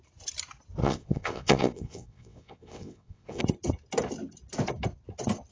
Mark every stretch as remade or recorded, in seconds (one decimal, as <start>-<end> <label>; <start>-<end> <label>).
0.0-0.8 recorded; 0.8-3.4 remade; 3.4-5.5 recorded